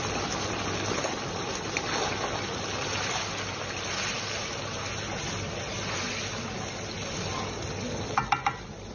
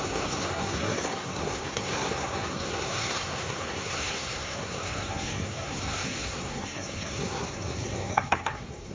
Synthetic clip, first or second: second